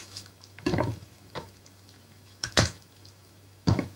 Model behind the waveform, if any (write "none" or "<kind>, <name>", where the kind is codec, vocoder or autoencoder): autoencoder, DAC-VAE